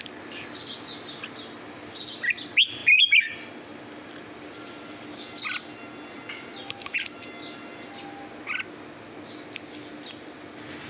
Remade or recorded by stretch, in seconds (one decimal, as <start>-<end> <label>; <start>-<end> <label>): 0.0-2.8 recorded; 2.8-5.2 remade; 5.2-6.6 recorded; 6.6-7.2 remade; 7.2-10.9 recorded